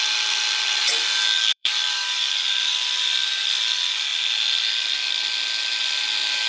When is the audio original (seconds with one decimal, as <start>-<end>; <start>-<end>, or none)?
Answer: 0.0-1.5; 3.4-6.5